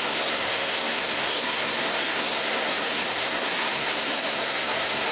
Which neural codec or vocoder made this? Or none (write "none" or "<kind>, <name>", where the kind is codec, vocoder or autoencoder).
codec, SNAC